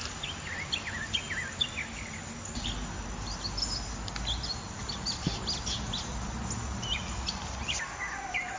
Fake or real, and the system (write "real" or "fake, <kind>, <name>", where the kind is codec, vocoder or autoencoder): real